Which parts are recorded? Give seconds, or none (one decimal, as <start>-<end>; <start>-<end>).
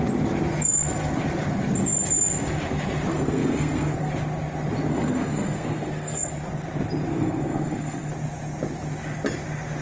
0.0-3.1; 4.1-4.9; 6.3-7.1; 8.1-9.8